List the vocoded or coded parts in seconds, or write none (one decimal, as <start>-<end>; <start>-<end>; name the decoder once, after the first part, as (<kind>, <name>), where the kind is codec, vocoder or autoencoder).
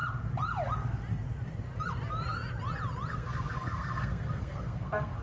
3.1-5.2 (codec, SNAC)